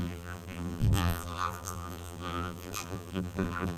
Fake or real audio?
fake